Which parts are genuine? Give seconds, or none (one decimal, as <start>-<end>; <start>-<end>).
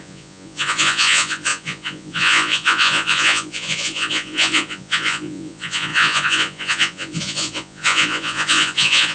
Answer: none